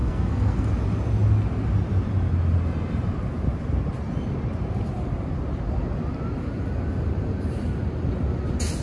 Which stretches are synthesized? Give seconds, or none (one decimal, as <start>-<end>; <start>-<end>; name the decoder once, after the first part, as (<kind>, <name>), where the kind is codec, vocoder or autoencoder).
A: 0.0-0.7 (codec, SNAC)